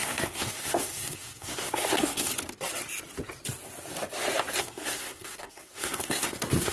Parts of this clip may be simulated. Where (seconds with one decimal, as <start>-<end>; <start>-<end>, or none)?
0.0-2.3; 4.6-6.7